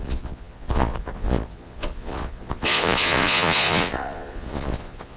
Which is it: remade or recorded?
remade